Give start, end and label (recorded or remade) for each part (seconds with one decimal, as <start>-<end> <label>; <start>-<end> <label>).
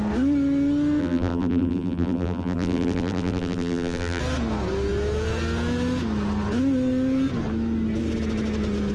0.0-1.0 recorded; 1.0-4.2 remade; 4.2-8.9 recorded